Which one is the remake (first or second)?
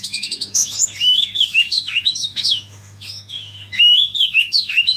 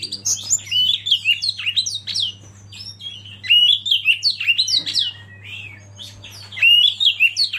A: first